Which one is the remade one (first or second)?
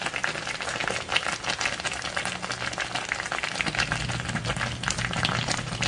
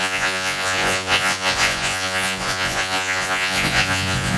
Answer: second